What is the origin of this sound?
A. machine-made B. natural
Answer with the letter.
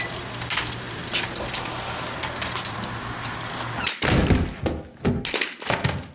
B